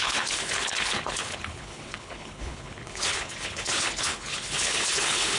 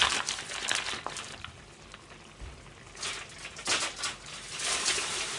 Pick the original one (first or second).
second